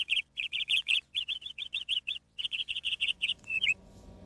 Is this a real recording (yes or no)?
no